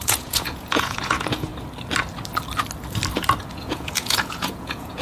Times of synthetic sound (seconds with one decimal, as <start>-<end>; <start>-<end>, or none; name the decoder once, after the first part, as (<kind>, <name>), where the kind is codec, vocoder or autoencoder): 0.0-1.5 (vocoder, Vocos); 3.4-5.0